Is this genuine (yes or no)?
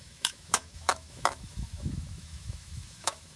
no